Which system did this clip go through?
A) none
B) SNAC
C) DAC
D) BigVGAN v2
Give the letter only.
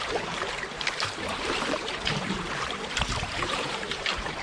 D